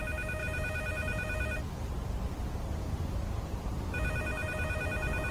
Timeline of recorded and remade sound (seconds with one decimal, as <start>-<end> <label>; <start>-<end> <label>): 0.0-5.3 recorded